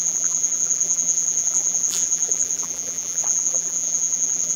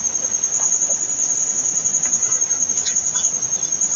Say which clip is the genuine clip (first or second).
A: second